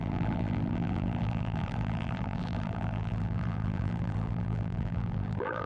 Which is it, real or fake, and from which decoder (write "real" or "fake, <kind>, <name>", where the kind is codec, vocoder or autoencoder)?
fake, vocoder, BigVGAN v2